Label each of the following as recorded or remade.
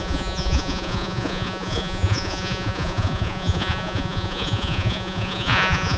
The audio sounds remade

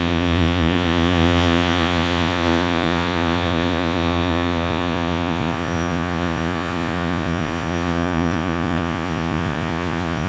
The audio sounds remade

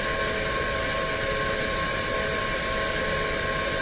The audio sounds recorded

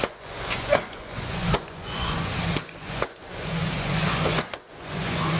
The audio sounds remade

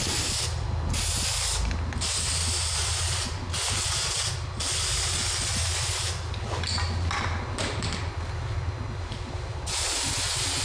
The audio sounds recorded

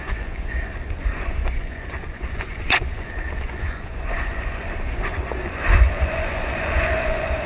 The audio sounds remade